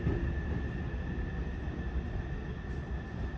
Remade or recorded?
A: recorded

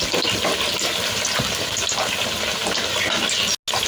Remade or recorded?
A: recorded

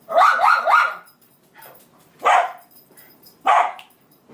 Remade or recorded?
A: remade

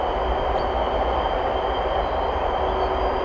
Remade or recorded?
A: recorded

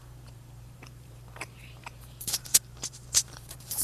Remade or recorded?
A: remade